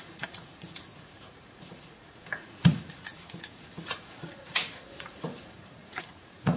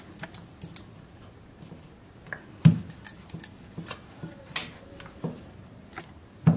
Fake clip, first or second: first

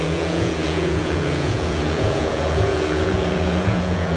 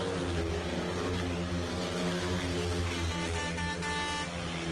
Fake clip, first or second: first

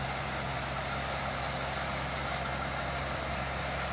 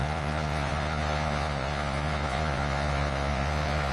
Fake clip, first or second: second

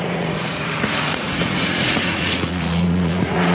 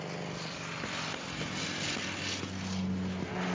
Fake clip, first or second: first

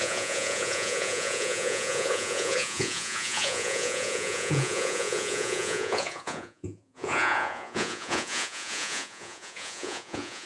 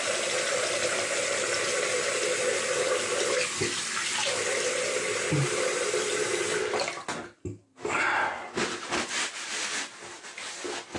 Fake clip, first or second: first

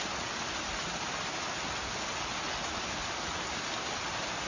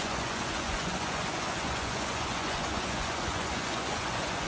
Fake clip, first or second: second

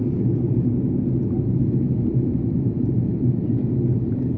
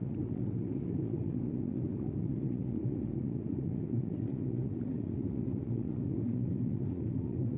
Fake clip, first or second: second